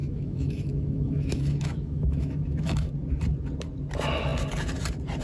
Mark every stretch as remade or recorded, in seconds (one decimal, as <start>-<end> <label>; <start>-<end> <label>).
0.0-2.9 remade; 2.9-5.2 recorded